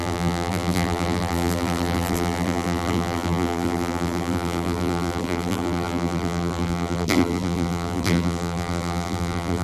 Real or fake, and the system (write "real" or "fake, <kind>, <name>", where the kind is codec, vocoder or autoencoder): fake, vocoder, BigVGAN v2